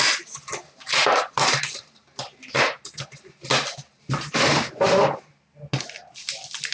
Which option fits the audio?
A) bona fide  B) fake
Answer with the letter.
A